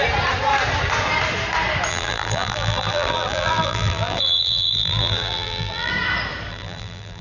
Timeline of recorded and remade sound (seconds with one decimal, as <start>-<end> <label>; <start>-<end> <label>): 0.0-1.9 recorded; 1.9-5.9 remade; 5.9-6.5 recorded; 6.5-7.2 remade